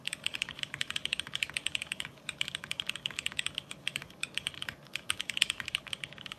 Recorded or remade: remade